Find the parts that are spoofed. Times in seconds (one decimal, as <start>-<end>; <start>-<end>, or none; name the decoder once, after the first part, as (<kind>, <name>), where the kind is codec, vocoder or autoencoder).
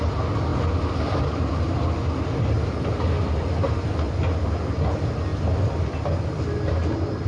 none